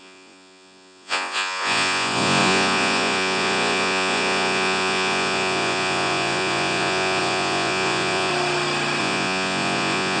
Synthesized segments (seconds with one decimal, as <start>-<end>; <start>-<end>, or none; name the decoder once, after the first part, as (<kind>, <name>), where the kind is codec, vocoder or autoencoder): 0.0-8.3 (vocoder, Vocos); 9.0-10.2